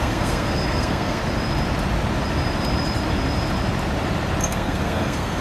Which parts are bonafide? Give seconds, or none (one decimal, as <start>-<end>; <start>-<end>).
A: 1.2-4.4